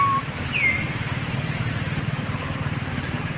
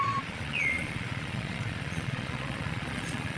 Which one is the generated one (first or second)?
second